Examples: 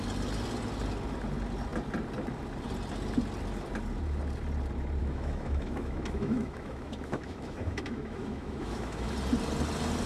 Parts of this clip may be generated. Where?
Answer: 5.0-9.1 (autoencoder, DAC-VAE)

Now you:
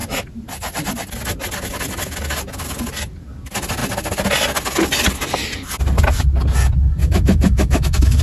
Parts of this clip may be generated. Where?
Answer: 7.0-8.2 (autoencoder, DAC-VAE)

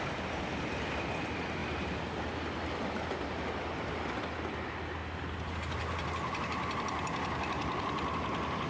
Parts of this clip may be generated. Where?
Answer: none

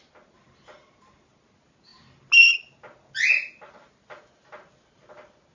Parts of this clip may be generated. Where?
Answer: none

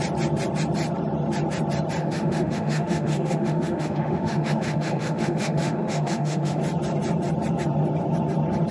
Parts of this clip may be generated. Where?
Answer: 2.0-6.6 (autoencoder, DAC-VAE)